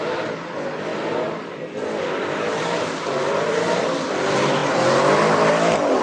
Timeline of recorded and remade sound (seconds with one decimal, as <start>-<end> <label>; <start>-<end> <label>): 0.0-6.0 recorded